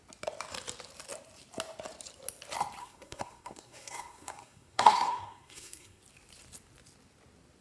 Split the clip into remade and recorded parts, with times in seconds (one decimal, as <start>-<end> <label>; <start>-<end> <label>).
0.0-2.8 recorded; 2.8-6.0 remade; 6.0-7.6 recorded